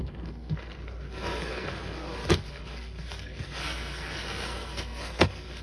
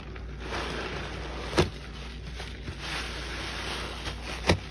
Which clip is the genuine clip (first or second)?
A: second